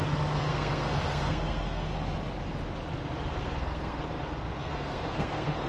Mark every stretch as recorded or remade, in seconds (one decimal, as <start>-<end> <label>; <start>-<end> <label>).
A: 0.0-1.9 remade; 1.9-3.3 recorded; 3.3-5.7 remade